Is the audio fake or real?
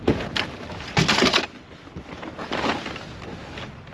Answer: real